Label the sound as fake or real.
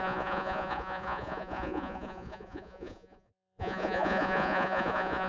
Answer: fake